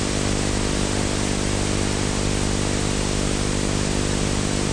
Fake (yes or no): no